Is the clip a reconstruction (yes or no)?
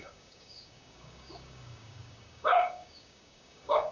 yes